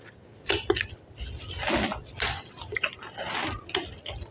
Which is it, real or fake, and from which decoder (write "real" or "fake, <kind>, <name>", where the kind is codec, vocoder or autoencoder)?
real